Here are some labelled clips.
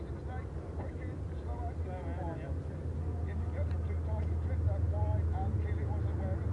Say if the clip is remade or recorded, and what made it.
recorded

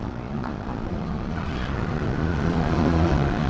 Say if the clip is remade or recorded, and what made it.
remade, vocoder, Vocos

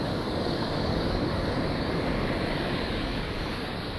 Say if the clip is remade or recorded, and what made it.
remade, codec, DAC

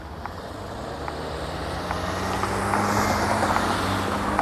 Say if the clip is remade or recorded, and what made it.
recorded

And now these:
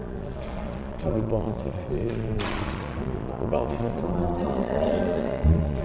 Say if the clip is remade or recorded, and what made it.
remade, vocoder, Vocos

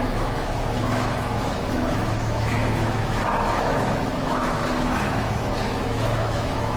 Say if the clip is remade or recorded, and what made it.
remade, autoencoder, DAC-VAE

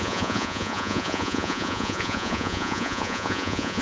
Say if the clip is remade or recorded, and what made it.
remade, vocoder, Vocos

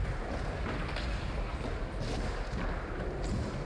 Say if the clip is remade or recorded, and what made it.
recorded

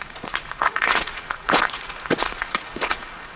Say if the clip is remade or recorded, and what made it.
remade, vocoder, Vocos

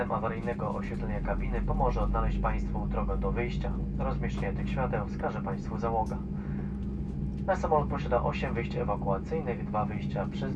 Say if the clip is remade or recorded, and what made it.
recorded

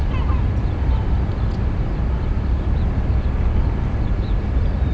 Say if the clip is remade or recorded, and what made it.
remade, vocoder, BigVGAN v2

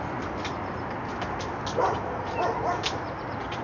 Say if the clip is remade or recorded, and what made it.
recorded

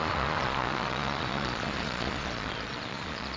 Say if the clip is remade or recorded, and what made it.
remade, vocoder, Vocos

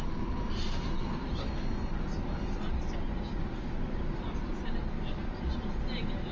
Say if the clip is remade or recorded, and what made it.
recorded